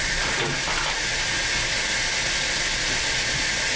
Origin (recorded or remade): recorded